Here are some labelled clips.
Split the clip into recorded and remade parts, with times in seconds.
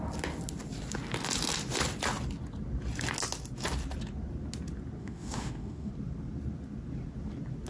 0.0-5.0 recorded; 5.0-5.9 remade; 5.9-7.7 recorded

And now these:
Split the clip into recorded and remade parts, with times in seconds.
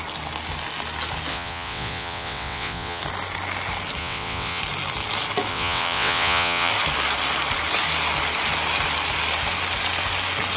0.0-1.3 recorded; 1.3-3.0 remade; 3.0-4.0 recorded; 4.0-4.6 remade; 4.6-5.5 recorded; 5.5-6.7 remade; 6.7-10.6 recorded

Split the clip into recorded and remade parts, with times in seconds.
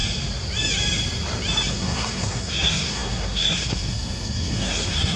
0.0-1.7 recorded; 1.7-5.2 remade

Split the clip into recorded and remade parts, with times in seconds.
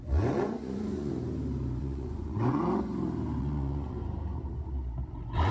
0.0-1.1 remade; 1.1-1.8 recorded; 1.8-2.6 remade; 2.6-3.4 recorded; 3.4-4.0 remade; 4.0-5.1 recorded; 5.1-5.5 remade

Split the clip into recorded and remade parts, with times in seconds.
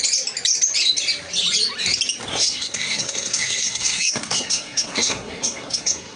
0.0-2.3 recorded; 2.3-6.2 remade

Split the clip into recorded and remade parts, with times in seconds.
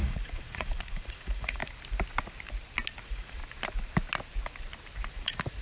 0.0-1.6 remade; 1.6-3.0 recorded; 3.0-3.4 remade; 3.4-5.1 recorded; 5.1-5.6 remade